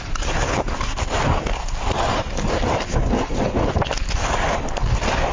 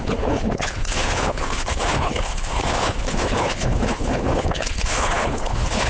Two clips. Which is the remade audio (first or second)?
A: second